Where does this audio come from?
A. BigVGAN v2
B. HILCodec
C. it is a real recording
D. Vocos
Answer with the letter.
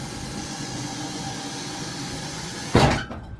D